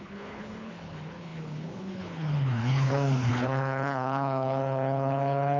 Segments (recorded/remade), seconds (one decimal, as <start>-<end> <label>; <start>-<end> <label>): 0.0-5.6 remade